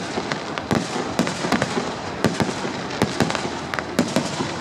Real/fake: fake